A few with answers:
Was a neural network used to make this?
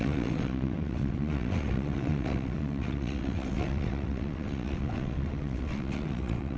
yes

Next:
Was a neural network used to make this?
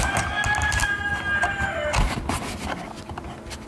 no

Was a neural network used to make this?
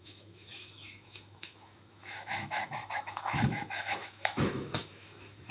yes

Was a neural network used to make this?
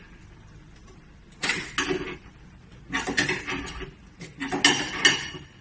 no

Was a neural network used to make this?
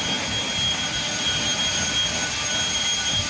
no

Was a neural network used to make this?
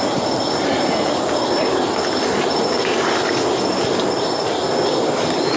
no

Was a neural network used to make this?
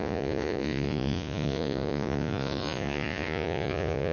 yes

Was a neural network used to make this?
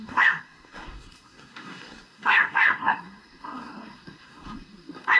yes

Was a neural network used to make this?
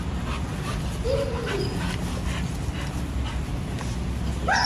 no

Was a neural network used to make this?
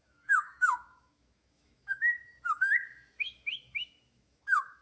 yes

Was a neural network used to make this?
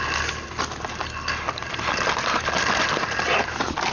no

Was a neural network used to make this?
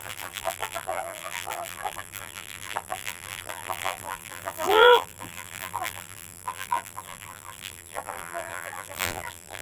yes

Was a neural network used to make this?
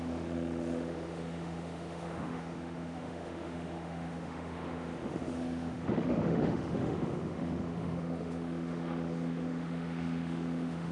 yes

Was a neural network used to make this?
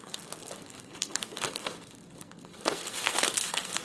yes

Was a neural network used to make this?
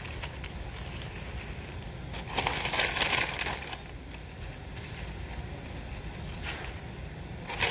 no